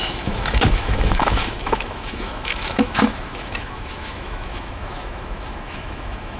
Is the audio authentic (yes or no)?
no